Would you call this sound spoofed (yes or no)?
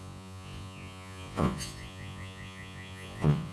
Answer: yes